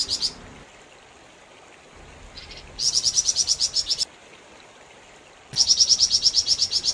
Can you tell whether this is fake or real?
real